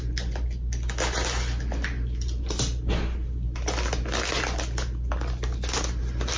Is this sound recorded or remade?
recorded